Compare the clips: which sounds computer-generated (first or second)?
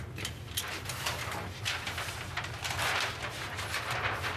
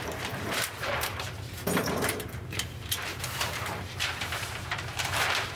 second